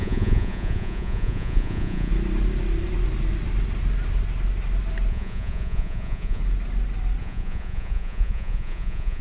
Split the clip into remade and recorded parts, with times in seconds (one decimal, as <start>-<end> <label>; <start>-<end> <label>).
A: 0.0-2.1 remade; 2.1-5.1 recorded; 5.1-6.4 remade; 6.4-7.2 recorded; 7.2-9.2 remade